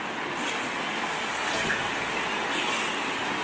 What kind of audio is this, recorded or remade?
recorded